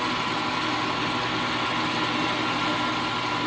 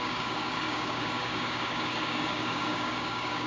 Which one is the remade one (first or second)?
second